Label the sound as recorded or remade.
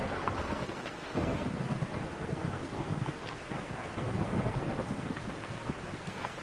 remade